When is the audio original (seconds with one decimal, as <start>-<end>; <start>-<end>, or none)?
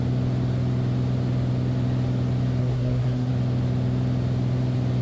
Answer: 0.0-2.6; 3.3-5.0